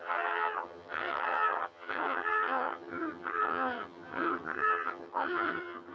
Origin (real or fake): fake